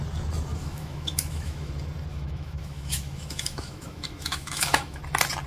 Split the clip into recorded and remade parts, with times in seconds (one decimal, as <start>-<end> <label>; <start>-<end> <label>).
0.0-0.5 recorded; 0.5-1.7 remade; 1.7-2.1 recorded; 2.1-5.0 remade; 5.0-5.5 recorded